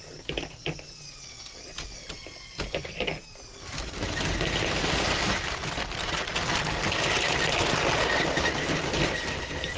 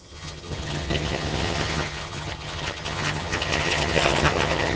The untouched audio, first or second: first